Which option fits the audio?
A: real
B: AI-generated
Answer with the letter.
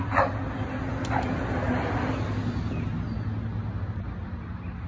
A